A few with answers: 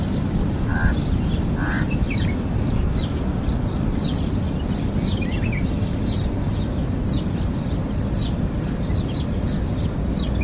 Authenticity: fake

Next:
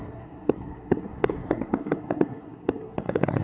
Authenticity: fake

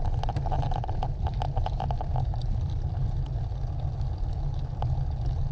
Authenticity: fake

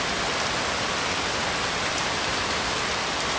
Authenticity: real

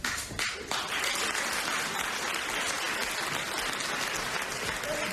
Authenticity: real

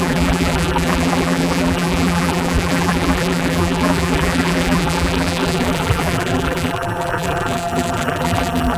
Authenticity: fake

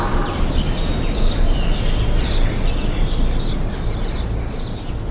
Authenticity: real